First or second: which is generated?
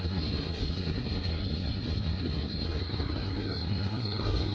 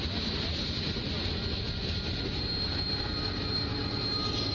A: first